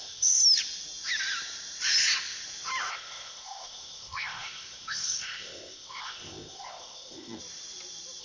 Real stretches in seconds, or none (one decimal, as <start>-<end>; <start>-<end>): 0.4-2.9; 7.4-8.2